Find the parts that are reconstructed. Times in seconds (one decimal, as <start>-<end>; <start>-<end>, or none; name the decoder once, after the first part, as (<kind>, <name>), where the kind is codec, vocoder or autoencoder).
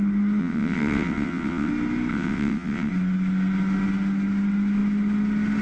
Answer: 0.4-1.7 (vocoder, WaveNeXt); 2.1-2.9